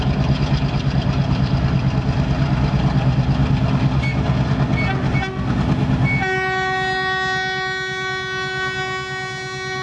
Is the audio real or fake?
real